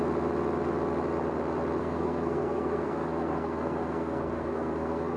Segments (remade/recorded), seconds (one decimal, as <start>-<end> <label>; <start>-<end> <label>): 0.0-1.8 recorded; 1.8-5.2 remade